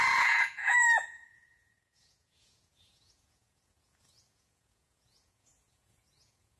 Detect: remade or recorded remade